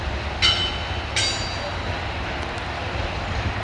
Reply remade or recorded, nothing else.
recorded